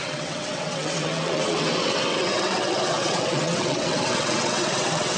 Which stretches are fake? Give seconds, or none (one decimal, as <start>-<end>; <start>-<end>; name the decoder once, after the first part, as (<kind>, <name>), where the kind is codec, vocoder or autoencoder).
0.0-5.2 (vocoder, WaveNeXt)